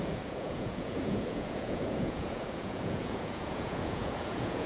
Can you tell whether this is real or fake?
fake